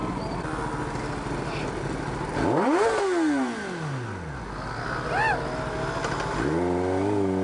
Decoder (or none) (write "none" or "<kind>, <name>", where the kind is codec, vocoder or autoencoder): none